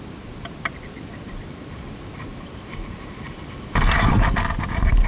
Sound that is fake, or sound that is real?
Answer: real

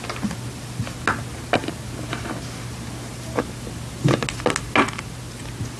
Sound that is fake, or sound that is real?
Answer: real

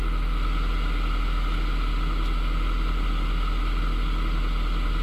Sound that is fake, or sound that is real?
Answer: real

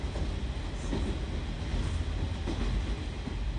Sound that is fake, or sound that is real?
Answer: real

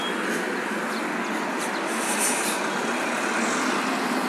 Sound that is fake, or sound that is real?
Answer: real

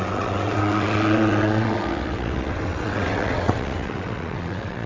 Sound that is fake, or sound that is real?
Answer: fake